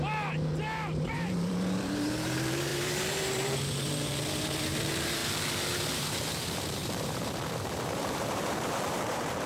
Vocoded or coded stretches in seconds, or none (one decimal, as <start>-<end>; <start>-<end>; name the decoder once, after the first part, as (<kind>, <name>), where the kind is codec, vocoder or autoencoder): 0.0-5.2 (vocoder, BigVGAN v2); 5.8-9.5